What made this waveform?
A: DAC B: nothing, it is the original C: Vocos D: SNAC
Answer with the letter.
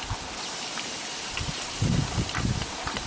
B